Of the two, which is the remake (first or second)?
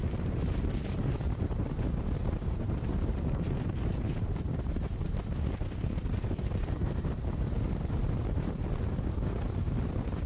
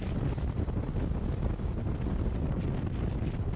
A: first